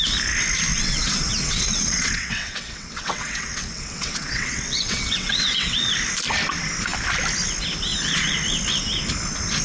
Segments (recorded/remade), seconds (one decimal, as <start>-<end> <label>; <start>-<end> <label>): 0.0-0.7 recorded; 0.7-5.9 remade; 5.9-9.6 recorded